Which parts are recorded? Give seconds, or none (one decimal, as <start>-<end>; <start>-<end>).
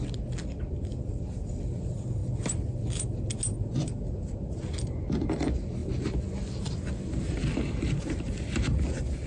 0.0-9.3